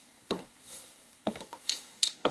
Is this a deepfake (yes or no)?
yes